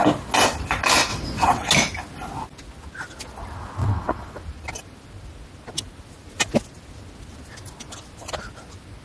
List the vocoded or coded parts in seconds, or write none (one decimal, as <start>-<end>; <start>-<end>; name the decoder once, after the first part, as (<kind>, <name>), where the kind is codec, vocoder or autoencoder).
1.1-1.7 (vocoder, WaveNeXt); 3.8-4.4